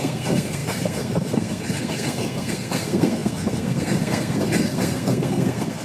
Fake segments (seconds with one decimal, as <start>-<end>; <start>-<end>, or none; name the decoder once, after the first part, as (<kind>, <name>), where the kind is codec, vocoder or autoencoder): 0.0-5.8 (codec, SNAC)